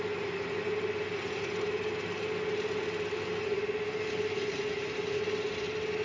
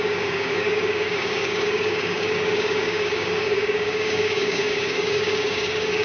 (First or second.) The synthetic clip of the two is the second